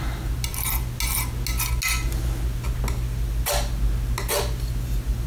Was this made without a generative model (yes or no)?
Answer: yes